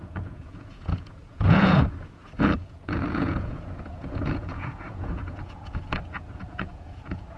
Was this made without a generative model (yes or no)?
no